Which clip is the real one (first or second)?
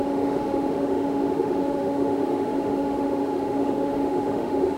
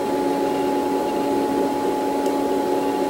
second